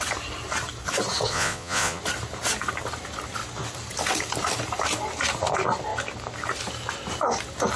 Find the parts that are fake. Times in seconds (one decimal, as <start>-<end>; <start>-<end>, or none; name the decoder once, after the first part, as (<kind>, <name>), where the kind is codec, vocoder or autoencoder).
1.3-2.0 (vocoder, Vocos)